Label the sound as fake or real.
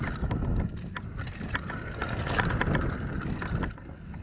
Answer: real